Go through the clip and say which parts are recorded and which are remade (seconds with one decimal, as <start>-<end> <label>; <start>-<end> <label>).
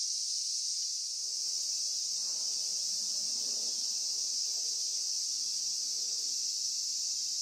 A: 0.0-7.4 recorded